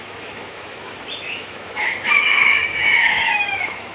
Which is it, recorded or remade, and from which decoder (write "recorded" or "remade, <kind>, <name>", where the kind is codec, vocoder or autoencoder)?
remade, autoencoder, DAC-VAE